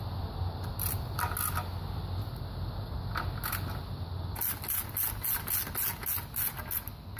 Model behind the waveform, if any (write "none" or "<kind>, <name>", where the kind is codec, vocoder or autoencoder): none